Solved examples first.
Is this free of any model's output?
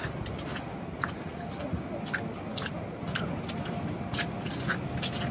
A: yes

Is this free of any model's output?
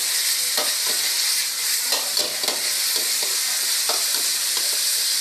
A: yes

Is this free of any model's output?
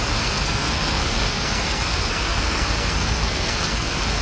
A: no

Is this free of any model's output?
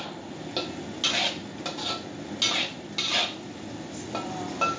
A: yes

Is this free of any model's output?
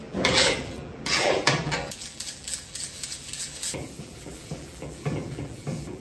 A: no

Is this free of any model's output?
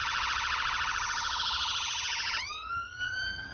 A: no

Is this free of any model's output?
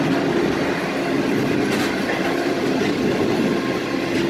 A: yes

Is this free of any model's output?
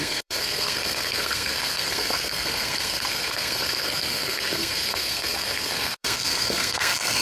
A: no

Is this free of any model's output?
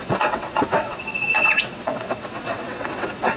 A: no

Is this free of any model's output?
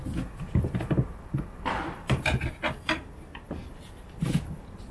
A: yes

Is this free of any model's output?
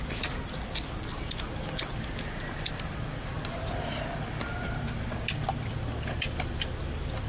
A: yes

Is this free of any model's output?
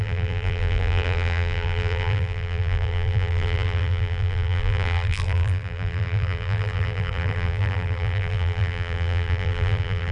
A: no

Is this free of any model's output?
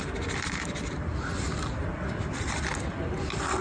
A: no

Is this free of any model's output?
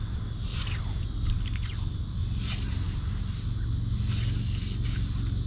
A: yes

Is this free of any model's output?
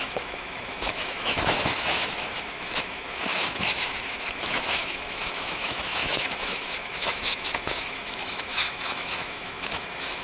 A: no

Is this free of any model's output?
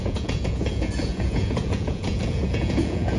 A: no